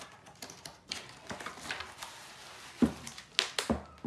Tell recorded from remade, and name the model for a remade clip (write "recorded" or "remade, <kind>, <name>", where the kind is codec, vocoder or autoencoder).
recorded